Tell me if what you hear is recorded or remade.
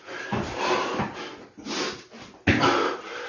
recorded